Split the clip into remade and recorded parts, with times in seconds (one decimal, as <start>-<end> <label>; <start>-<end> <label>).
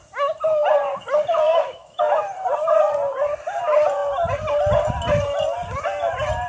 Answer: 0.0-1.5 recorded; 1.5-2.2 remade; 2.2-6.5 recorded